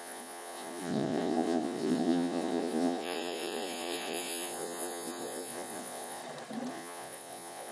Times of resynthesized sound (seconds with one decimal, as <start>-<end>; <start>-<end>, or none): 0.0-6.2; 6.7-7.7